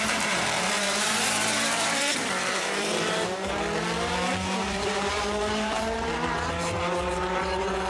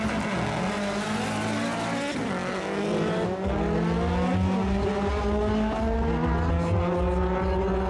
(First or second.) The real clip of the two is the second